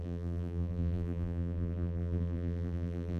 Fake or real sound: fake